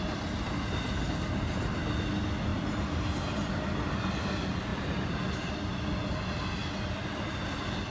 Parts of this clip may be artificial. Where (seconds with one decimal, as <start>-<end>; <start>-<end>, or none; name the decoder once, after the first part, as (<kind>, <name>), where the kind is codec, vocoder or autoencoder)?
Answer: 4.7-5.5 (vocoder, BigVGAN v2)